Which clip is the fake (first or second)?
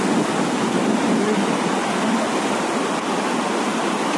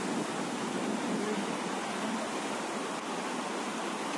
first